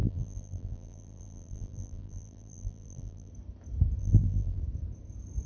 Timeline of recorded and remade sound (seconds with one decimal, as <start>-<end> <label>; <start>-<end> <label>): 0.0-3.3 remade; 3.3-4.0 recorded; 4.0-4.6 remade; 4.6-5.5 recorded